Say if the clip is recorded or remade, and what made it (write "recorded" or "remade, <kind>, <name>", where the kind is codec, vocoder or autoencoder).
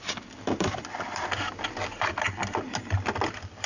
recorded